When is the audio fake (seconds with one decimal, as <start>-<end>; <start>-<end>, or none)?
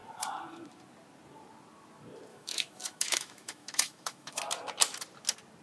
2.3-4.4